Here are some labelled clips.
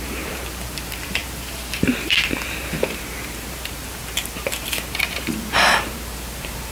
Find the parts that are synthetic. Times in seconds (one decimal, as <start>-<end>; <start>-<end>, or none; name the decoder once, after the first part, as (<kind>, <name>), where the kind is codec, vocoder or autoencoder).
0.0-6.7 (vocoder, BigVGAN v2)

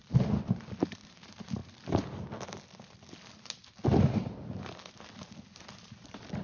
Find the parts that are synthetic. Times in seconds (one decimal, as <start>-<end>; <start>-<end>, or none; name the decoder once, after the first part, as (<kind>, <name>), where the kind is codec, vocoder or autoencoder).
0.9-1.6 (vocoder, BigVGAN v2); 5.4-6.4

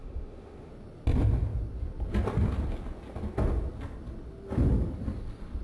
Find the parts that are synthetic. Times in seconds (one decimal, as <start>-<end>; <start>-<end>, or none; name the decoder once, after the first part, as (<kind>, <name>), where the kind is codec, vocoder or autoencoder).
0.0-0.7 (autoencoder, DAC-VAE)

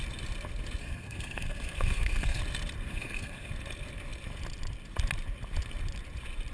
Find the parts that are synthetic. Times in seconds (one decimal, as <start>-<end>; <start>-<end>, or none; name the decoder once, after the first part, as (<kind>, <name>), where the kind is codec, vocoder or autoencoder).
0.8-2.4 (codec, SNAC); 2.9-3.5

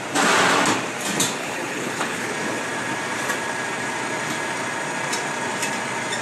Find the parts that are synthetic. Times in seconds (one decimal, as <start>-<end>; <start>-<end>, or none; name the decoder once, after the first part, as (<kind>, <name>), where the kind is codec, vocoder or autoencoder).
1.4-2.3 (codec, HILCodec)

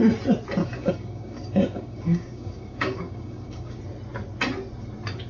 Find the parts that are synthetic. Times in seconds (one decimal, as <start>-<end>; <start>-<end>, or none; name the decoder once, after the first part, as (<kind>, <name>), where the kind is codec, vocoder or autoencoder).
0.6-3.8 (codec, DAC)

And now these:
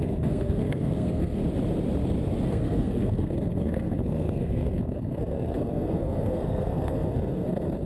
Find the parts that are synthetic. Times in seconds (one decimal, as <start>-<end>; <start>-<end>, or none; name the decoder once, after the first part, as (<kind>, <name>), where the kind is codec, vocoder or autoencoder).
0.0-1.4 (codec, SNAC); 2.5-7.9

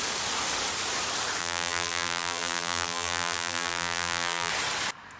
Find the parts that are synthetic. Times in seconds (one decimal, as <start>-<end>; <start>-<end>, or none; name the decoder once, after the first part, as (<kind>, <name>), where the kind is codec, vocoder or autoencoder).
1.4-4.5 (vocoder, BigVGAN v2)